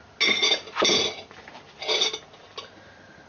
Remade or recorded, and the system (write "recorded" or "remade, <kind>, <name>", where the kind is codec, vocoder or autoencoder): recorded